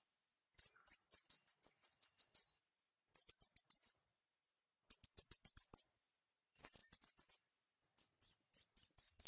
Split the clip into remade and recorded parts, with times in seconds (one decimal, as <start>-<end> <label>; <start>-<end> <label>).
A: 0.0-9.3 recorded